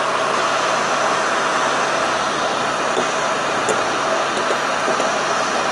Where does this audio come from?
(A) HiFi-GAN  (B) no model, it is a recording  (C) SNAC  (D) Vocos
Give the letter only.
B